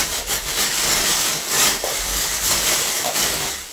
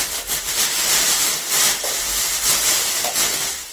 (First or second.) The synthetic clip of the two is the first